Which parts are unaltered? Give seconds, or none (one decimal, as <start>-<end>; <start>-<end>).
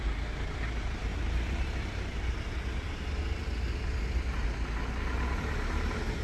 0.0-6.2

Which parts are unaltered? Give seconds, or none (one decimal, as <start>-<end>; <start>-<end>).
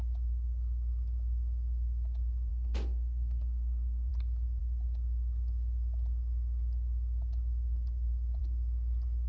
0.0-2.5; 4.1-9.3